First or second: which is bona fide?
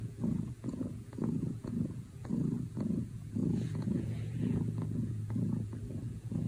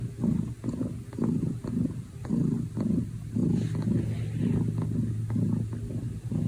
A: second